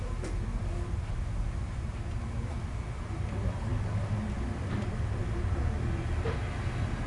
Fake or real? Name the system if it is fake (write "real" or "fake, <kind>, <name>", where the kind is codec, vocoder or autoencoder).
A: real